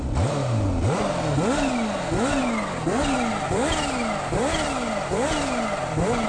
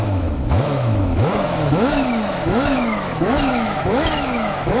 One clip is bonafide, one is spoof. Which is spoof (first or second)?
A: second